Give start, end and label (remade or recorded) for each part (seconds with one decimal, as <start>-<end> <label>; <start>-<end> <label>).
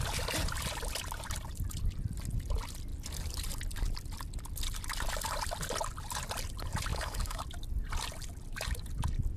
0.0-6.9 recorded; 6.9-7.4 remade; 7.4-9.4 recorded